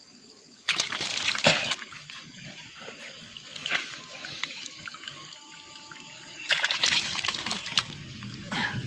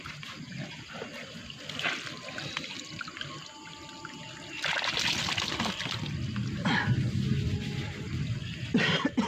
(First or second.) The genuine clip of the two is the second